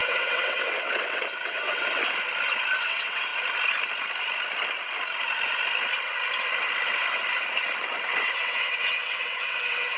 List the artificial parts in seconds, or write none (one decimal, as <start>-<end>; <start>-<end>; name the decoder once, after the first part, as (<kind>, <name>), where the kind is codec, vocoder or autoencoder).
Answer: 0.0-2.0 (vocoder, WaveNeXt); 2.8-3.3; 8.4-10.0